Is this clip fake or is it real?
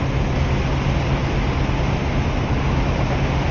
real